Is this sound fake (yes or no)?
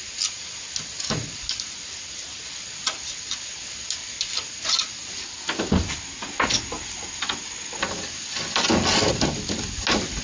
no